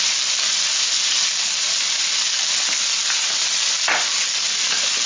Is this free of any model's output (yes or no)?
yes